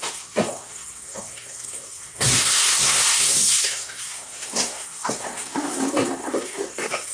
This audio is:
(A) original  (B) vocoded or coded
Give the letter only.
B